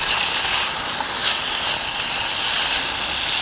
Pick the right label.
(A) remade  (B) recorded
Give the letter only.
B